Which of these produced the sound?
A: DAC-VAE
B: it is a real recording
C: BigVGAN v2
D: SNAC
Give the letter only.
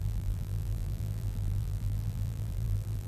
C